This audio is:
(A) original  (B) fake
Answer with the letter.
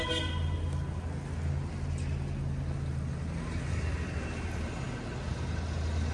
A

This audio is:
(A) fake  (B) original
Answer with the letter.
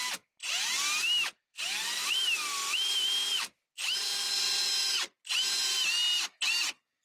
B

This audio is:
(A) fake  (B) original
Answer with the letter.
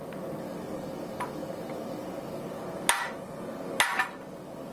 B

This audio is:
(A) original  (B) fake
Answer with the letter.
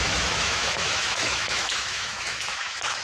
B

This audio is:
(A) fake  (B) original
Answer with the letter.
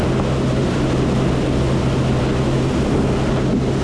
B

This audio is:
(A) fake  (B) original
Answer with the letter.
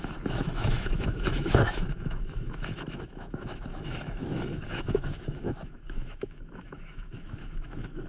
A